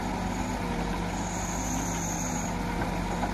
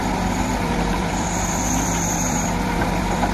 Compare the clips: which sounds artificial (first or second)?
second